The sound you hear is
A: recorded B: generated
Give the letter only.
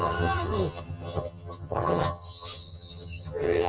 B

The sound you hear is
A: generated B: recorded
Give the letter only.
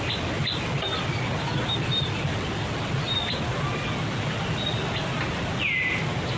B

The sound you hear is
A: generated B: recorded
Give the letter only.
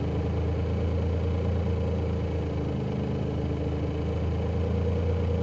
B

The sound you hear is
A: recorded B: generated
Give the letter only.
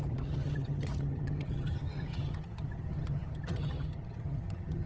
B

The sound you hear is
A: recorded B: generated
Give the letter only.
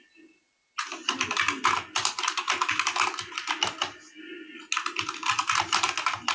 A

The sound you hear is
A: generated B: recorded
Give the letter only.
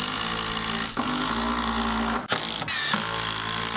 B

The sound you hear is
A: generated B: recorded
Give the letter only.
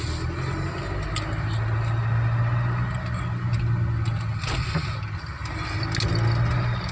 B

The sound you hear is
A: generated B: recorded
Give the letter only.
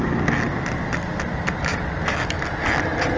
B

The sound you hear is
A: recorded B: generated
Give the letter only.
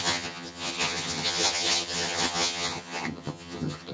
B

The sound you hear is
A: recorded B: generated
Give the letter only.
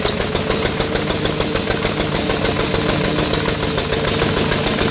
A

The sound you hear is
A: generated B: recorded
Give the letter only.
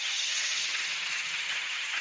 A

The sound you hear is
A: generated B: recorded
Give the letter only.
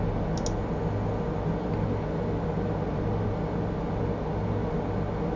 B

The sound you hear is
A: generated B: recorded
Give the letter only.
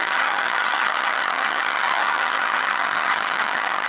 A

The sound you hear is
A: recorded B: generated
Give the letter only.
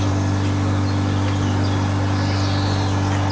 A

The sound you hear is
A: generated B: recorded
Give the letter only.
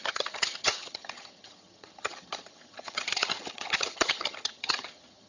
A